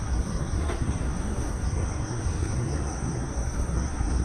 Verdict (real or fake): fake